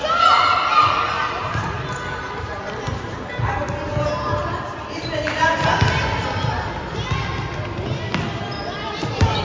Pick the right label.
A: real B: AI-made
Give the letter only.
A